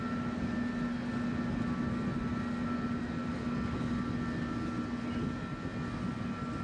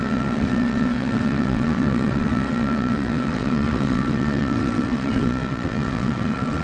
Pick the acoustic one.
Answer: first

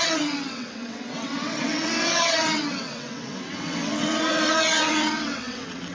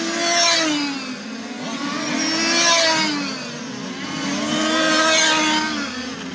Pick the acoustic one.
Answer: second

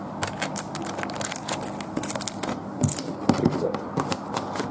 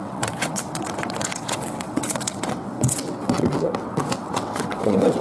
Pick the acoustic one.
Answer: first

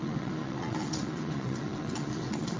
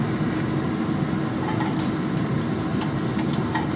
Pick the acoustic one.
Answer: second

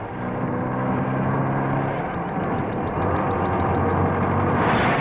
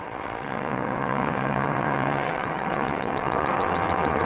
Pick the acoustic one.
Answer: first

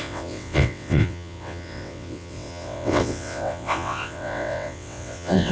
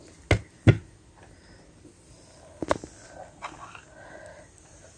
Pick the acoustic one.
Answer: second